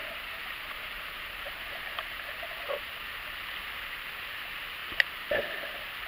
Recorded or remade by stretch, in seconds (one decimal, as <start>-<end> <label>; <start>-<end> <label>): 0.0-2.9 remade; 2.9-4.8 recorded; 4.8-5.3 remade; 5.3-6.1 recorded